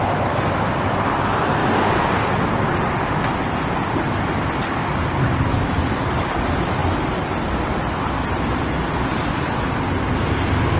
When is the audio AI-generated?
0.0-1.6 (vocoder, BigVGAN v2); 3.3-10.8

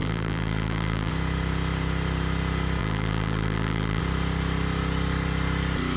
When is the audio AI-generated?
0.0-1.1 (vocoder, BigVGAN v2); 2.8-4.0

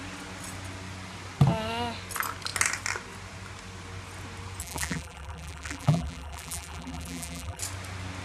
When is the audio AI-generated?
4.6-7.6 (vocoder, BigVGAN v2)

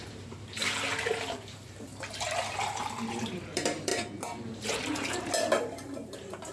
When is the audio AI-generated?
0.0-0.6 (vocoder, BigVGAN v2); 1.2-1.9; 2.6-6.5

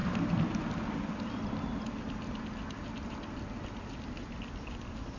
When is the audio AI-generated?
none